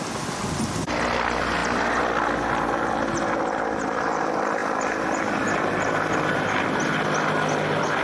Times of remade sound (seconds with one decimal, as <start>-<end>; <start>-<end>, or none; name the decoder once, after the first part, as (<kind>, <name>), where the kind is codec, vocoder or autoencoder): none